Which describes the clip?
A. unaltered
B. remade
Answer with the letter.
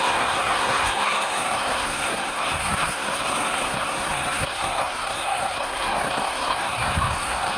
B